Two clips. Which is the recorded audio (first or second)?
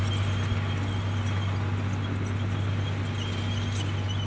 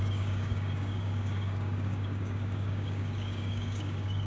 first